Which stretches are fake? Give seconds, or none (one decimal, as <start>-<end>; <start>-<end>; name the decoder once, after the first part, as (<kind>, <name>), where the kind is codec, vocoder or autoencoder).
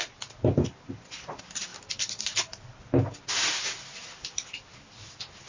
none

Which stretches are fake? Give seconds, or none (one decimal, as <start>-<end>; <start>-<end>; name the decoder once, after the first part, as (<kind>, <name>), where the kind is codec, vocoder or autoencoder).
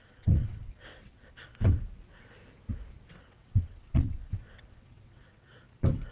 0.0-1.5 (vocoder, WaveNeXt); 3.1-5.5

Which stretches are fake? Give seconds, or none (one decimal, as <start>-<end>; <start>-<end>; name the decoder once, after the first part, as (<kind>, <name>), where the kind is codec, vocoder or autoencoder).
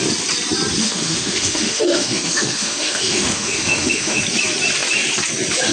0.8-4.2 (autoencoder, DAC-VAE)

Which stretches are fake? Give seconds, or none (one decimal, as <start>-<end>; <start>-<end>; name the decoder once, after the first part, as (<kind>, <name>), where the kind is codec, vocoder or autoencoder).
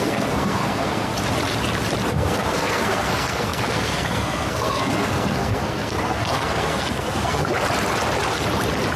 0.0-1.1 (codec, SNAC); 2.1-7.5